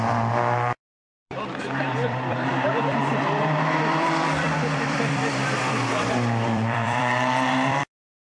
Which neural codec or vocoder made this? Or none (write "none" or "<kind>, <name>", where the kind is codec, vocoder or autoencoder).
vocoder, BigVGAN v2